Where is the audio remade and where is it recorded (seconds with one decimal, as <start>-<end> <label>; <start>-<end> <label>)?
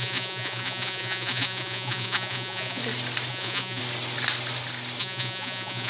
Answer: 0.0-2.8 remade; 2.8-3.3 recorded; 3.3-3.8 remade; 3.8-5.0 recorded; 5.0-5.9 remade